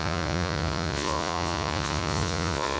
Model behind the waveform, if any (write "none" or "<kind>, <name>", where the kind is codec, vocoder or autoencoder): vocoder, Vocos